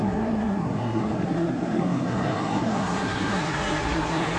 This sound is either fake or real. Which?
fake